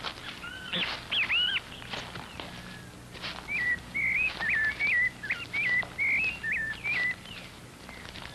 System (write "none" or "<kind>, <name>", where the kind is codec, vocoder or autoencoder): none